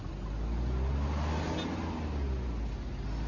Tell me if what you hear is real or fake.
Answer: real